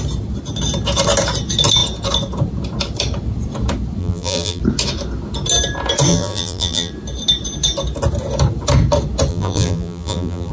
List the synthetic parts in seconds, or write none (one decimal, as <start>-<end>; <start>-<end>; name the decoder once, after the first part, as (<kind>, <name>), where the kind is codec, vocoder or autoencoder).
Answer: 4.0-4.6 (vocoder, BigVGAN v2); 6.1-6.9; 9.3-10.5